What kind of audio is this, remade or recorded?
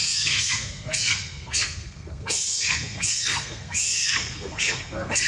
remade